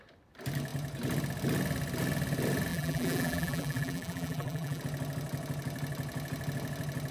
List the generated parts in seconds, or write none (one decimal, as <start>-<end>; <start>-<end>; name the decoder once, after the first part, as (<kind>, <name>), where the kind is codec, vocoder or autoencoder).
2.7-4.8 (vocoder, BigVGAN v2)